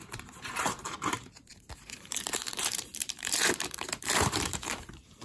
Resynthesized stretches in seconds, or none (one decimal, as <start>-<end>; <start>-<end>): 0.0-5.2